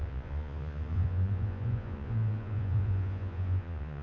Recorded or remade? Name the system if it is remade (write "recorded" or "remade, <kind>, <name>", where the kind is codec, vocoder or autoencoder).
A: remade, vocoder, Vocos